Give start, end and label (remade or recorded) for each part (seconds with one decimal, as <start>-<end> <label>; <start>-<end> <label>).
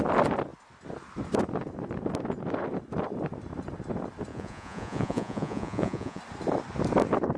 0.0-4.3 recorded; 4.3-6.2 remade; 6.2-7.4 recorded